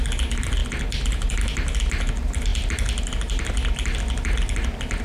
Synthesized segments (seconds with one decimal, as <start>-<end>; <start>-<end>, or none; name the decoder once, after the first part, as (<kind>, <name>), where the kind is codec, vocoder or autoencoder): none